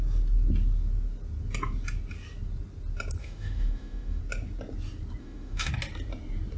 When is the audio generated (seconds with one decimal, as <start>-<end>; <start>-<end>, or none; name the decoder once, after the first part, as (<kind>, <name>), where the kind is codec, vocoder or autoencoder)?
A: 3.2-4.2 (autoencoder, DAC-VAE); 5.2-5.7